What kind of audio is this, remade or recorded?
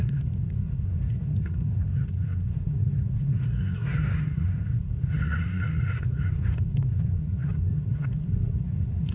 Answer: remade